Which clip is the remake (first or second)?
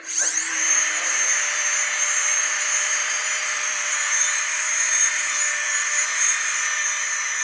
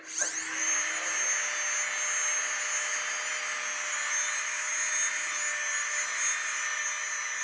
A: first